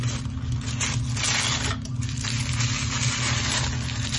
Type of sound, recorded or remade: recorded